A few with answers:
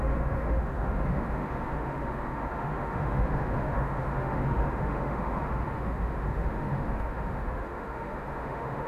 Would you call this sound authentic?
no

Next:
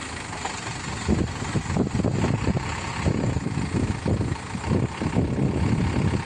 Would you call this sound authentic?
yes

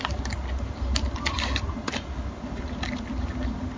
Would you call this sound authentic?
yes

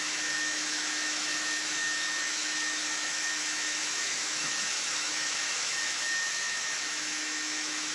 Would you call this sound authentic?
no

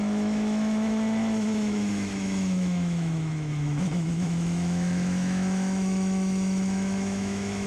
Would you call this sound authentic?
no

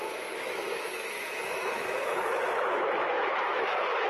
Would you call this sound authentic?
no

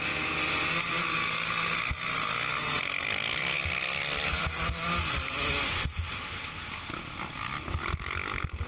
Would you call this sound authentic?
yes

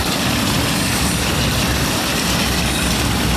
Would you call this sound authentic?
yes